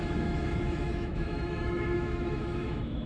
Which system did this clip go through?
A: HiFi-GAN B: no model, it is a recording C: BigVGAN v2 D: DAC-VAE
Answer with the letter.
D